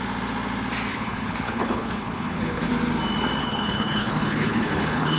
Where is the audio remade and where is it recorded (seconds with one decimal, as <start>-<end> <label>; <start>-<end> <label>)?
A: 0.0-0.9 recorded; 0.9-2.7 remade; 2.7-3.4 recorded; 3.4-5.2 remade